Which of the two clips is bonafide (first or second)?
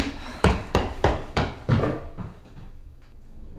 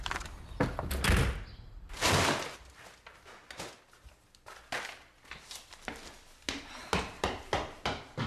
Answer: second